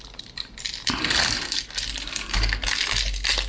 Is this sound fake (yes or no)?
no